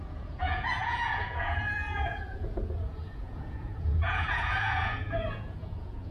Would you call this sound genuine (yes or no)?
no